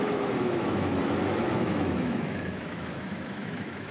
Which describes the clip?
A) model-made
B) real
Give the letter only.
A